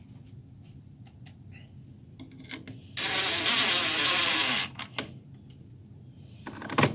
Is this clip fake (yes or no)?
no